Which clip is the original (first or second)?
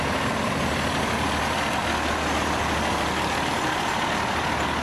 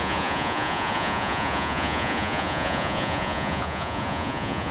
first